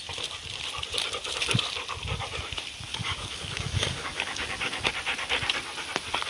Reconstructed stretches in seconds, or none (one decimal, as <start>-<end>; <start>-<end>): 2.9-4.9